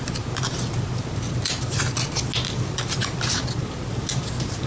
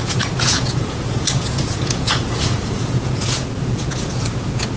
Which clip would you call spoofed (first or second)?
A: second